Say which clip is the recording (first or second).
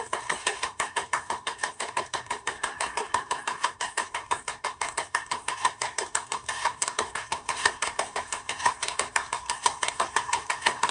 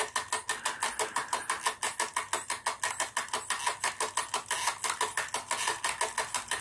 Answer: second